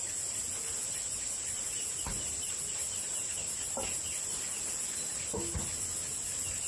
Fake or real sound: real